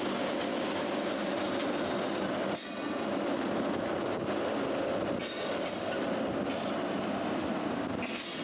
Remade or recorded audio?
recorded